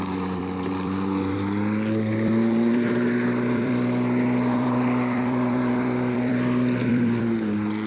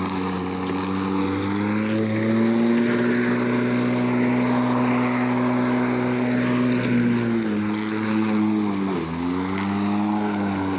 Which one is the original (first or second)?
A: second